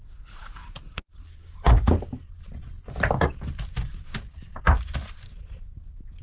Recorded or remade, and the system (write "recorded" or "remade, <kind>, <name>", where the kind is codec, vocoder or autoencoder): recorded